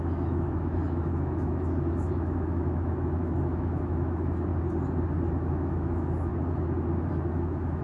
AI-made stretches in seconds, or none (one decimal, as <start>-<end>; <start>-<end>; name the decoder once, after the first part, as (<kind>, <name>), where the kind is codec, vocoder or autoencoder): 0.0-4.5 (autoencoder, DAC-VAE); 5.4-6.3; 7.1-7.8